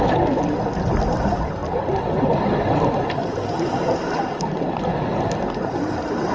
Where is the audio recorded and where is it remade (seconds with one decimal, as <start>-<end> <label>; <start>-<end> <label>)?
0.0-6.3 recorded